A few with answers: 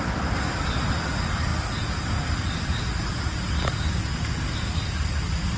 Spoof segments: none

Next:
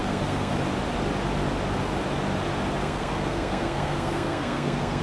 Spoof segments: 0.0-0.5 (codec, SNAC); 2.8-5.0